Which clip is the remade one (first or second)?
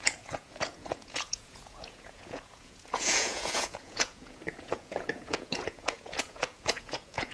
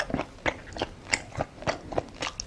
first